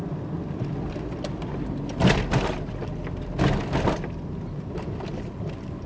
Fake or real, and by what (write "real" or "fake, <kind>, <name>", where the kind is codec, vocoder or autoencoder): real